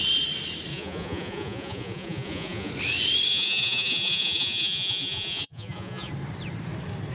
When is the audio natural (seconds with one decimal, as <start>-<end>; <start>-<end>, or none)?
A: 0.0-0.7; 2.7-3.3; 6.1-7.1